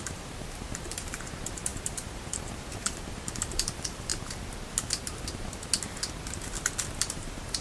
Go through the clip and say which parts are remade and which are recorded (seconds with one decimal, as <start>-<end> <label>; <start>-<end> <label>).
0.0-4.1 remade; 4.1-7.0 recorded; 7.0-7.6 remade